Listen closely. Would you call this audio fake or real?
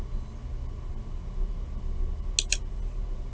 real